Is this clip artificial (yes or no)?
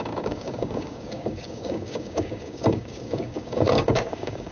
yes